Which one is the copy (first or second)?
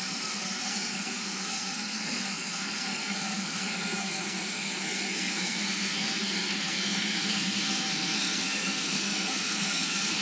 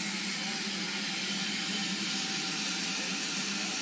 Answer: first